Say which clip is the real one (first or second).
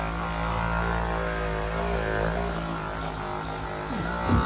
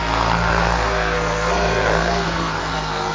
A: first